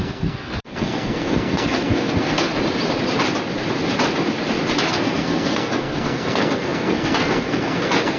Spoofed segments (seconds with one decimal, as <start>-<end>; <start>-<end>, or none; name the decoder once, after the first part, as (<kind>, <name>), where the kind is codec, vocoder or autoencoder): 0.0-2.5 (codec, SNAC); 4.9-8.2